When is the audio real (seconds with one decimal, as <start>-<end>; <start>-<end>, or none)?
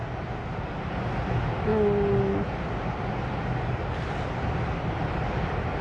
0.0-5.8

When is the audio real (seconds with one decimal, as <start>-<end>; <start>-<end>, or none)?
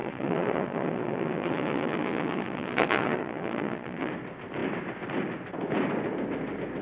4.1-6.8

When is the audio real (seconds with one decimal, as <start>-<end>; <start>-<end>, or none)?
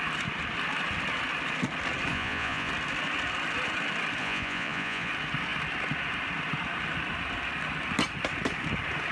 0.0-2.1; 2.7-4.2; 5.1-9.1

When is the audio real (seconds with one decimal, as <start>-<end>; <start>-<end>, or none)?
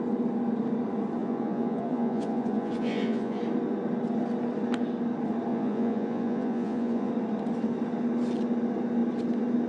0.0-1.2; 3.4-5.5; 7.1-9.7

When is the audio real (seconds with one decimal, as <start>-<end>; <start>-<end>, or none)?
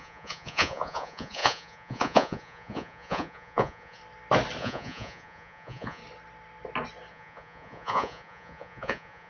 4.0-4.6; 6.0-7.1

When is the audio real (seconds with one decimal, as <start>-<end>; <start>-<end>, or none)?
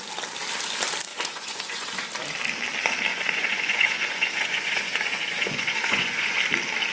0.0-1.1; 1.9-3.1; 6.4-6.9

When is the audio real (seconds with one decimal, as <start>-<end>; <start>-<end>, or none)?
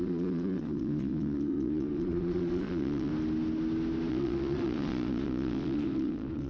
3.1-4.1